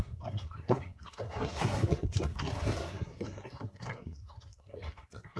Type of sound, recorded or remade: remade